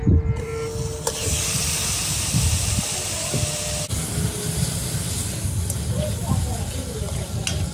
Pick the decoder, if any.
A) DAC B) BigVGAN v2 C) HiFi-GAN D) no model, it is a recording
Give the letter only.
D